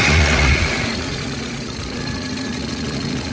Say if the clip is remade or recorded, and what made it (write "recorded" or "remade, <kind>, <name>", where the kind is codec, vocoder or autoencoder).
remade, vocoder, Vocos